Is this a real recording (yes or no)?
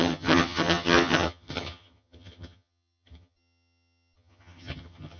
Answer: no